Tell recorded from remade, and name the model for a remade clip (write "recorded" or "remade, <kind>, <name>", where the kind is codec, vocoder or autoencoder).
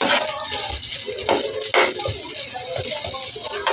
recorded